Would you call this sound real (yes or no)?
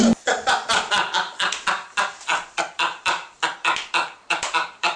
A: no